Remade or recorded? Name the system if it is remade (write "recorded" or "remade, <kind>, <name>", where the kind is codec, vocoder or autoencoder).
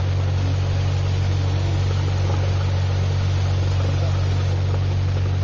recorded